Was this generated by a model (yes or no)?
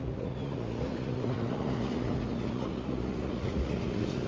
yes